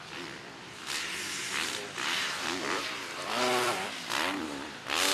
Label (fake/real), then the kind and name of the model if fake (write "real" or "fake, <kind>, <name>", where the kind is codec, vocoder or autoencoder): fake, vocoder, BigVGAN v2